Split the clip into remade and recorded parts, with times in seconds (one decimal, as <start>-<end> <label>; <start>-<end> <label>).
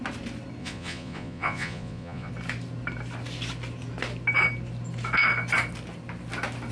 0.0-0.6 recorded; 0.6-2.3 remade; 2.3-6.7 recorded